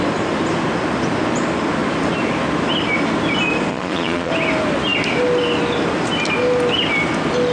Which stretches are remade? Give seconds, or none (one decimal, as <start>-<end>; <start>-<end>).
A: 3.7-4.3